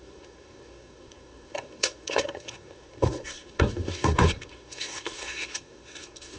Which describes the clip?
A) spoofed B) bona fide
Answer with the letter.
A